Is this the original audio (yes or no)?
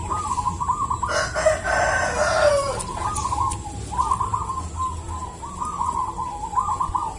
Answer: yes